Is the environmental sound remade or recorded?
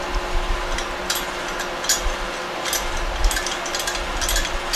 recorded